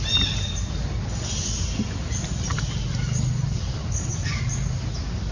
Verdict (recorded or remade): recorded